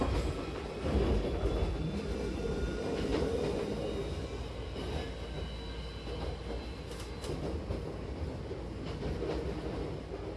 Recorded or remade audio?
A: recorded